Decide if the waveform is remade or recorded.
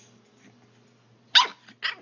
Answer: recorded